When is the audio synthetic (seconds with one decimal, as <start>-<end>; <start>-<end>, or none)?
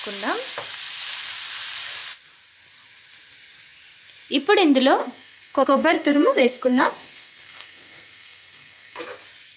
5.0-9.0